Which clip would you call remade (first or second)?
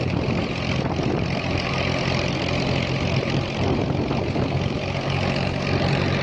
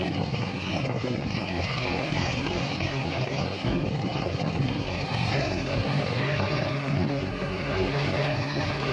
second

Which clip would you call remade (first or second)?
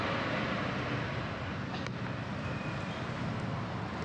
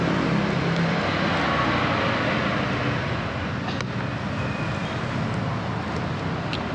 first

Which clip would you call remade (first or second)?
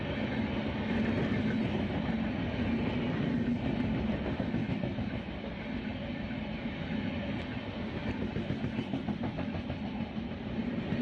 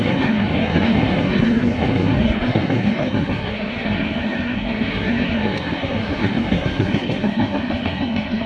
second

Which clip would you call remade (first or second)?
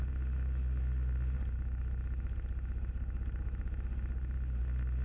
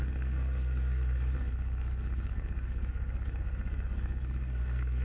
second